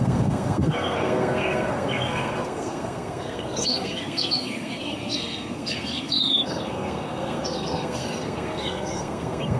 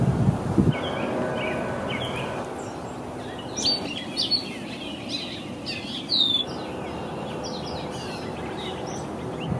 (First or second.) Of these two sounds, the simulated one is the first